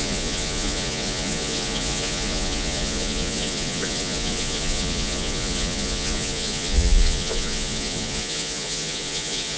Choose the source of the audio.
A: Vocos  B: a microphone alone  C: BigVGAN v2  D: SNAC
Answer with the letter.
A